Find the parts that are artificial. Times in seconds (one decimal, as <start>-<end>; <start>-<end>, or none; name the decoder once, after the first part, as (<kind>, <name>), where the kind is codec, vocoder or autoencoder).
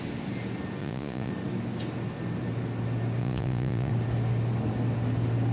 0.8-1.3 (vocoder, Vocos); 3.2-3.9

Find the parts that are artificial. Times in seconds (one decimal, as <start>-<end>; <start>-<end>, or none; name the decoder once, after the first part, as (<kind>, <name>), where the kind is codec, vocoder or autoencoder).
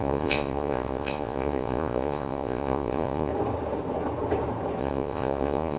0.0-3.3 (vocoder, Vocos); 4.8-5.8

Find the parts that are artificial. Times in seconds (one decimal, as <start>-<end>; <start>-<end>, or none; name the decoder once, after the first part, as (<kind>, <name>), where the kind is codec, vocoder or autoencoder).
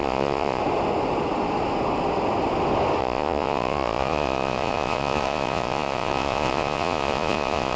0.0-0.6 (vocoder, Vocos); 3.0-7.8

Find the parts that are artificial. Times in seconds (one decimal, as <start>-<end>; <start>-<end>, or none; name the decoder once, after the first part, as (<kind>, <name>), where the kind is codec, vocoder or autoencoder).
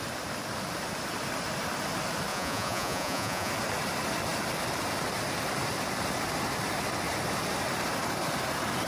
2.3-3.5 (vocoder, Vocos)